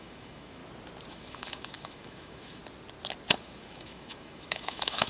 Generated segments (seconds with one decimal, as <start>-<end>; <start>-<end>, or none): 0.0-0.6; 1.1-2.6; 3.4-5.1